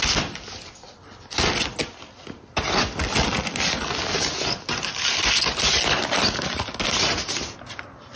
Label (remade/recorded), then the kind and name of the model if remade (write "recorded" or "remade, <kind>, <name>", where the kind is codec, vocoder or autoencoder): recorded